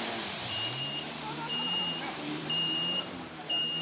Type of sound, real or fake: fake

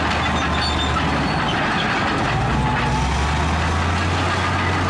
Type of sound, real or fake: real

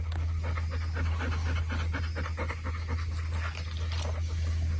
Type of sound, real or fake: real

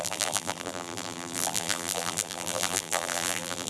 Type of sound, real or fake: fake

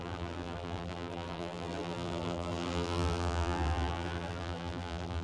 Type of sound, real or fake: fake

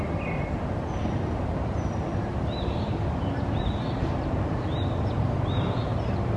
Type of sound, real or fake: real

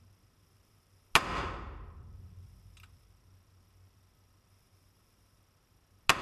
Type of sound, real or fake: real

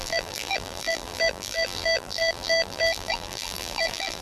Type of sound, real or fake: fake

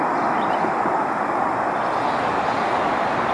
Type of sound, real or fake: real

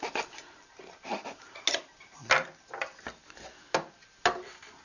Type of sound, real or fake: real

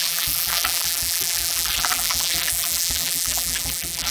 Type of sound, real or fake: fake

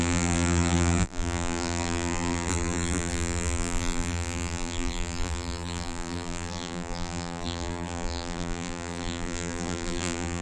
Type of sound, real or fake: fake